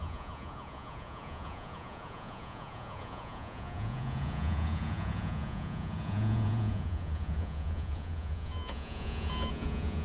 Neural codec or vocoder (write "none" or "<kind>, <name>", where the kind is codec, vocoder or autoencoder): vocoder, Vocos